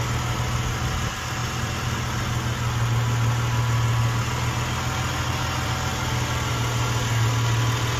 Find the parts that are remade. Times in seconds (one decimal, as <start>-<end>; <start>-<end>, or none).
none